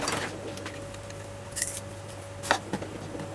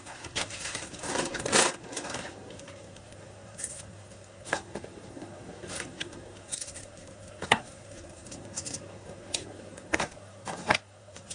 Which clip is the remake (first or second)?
second